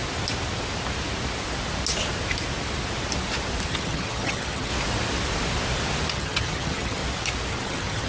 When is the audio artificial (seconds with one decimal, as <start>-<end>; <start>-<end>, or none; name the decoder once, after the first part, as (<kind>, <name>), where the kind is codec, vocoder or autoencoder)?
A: 3.7-4.7 (vocoder, HiFi-GAN); 6.1-7.0; 7.5-8.1